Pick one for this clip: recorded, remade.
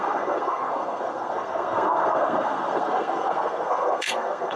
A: remade